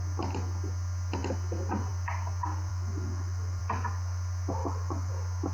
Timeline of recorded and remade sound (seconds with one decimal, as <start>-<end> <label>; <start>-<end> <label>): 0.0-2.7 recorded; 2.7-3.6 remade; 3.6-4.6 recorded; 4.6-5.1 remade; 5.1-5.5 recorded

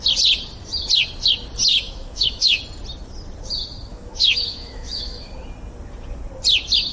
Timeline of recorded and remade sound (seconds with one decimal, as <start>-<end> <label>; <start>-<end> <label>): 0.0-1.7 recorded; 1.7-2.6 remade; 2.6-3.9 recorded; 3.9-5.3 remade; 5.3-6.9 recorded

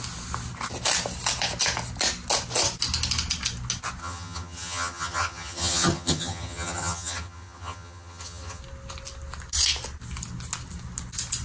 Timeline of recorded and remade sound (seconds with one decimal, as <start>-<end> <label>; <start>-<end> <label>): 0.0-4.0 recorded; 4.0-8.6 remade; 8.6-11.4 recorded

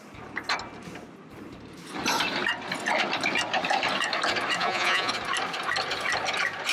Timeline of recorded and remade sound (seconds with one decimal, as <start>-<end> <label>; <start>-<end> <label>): 0.0-4.6 recorded; 4.6-5.1 remade; 5.1-6.7 recorded